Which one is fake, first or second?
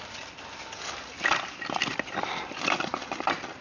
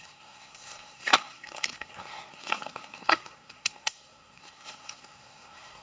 second